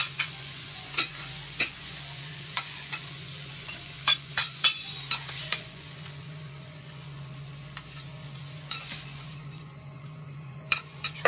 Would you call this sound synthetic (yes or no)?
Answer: yes